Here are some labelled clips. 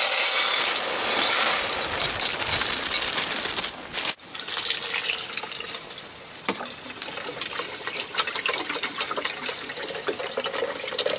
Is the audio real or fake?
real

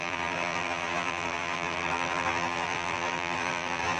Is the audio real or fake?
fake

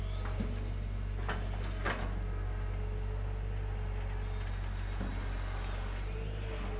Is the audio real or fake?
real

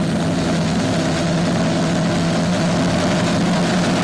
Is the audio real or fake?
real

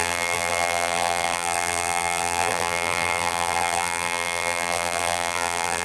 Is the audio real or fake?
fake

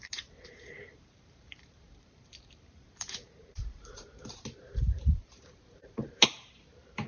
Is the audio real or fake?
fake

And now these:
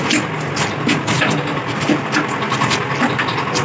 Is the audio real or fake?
real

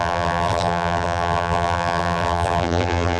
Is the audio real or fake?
fake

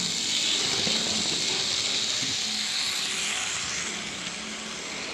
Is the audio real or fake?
real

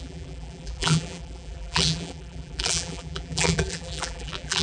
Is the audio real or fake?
fake